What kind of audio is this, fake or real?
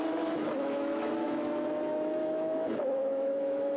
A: fake